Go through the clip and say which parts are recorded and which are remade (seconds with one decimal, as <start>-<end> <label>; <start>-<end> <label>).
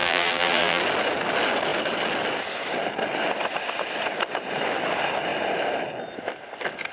0.0-0.8 remade; 0.8-6.9 recorded